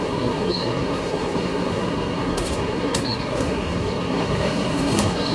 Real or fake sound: fake